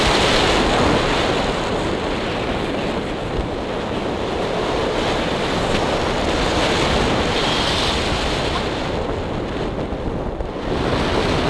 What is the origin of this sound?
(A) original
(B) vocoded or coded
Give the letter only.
A